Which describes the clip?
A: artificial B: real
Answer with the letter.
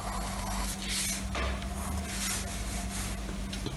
B